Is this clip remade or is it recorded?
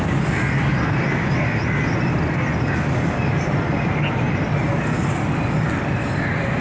recorded